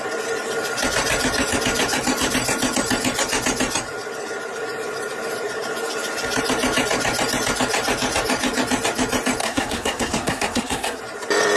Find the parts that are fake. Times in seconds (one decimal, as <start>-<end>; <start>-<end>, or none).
9.4-11.0